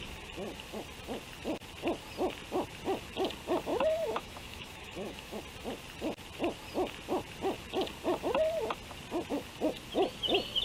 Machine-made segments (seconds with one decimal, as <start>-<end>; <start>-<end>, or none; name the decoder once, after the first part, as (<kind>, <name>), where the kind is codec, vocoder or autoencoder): 3.7-5.4 (autoencoder, DAC-VAE)